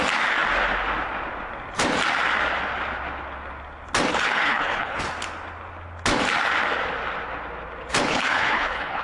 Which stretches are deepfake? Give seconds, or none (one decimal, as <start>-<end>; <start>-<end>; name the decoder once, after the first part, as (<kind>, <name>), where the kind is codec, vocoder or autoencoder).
4.1-5.0 (codec, HILCodec); 8.1-9.0